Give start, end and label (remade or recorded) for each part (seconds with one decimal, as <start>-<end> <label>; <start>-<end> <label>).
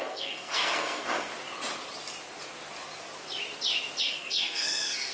0.0-1.3 remade; 1.3-4.0 recorded; 4.0-5.1 remade